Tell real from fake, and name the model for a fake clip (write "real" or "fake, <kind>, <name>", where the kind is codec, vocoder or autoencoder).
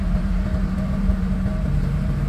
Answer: fake, vocoder, BigVGAN v2